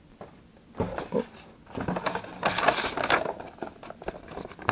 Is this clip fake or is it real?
real